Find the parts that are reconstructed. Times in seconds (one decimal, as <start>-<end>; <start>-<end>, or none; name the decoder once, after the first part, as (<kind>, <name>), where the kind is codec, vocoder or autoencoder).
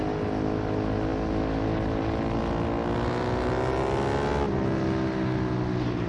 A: none